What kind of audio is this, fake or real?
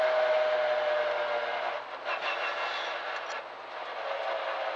real